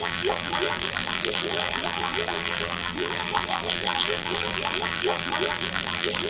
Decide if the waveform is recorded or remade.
remade